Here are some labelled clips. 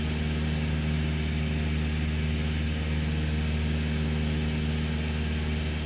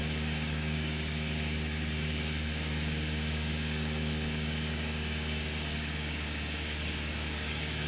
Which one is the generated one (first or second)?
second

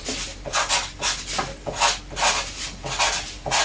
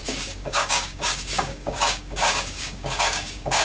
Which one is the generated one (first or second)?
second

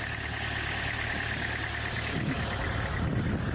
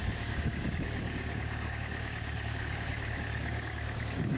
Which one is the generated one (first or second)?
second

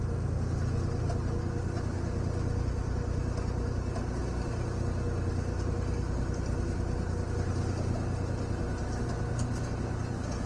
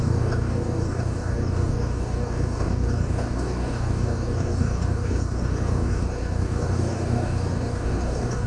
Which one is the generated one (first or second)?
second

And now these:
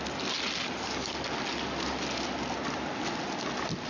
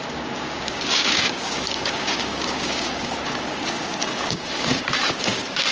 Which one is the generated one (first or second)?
second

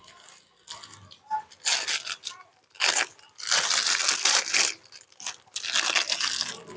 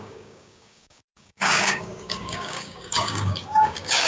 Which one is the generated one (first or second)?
second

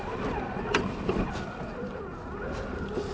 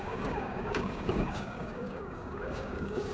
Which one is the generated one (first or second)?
second